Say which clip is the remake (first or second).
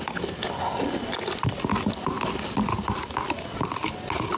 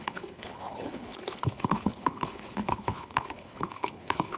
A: second